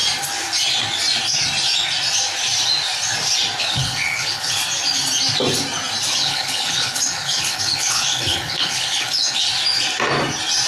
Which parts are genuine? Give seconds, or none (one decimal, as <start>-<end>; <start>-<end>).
0.0-3.6; 4.6-6.1; 9.5-10.7